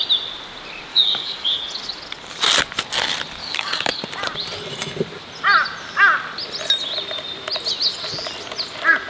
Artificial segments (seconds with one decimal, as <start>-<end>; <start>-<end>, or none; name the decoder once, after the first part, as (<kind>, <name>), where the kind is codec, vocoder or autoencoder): 0.9-1.6 (codec, DAC); 3.4-4.0